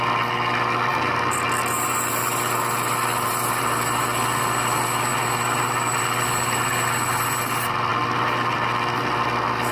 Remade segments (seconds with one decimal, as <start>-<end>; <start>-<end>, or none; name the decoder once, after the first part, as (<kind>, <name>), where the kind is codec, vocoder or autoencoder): none